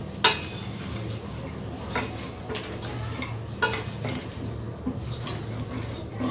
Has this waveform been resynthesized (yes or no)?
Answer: no